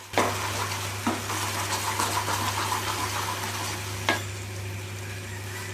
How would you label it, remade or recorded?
recorded